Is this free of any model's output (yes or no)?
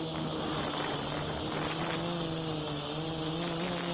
yes